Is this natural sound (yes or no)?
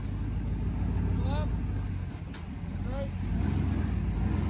yes